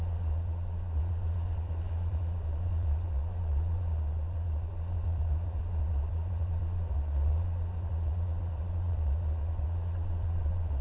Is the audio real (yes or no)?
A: no